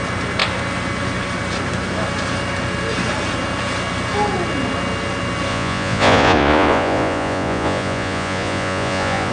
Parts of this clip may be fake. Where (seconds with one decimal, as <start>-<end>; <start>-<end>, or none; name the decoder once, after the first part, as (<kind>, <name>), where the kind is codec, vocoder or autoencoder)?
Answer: 5.5-9.3 (vocoder, Vocos)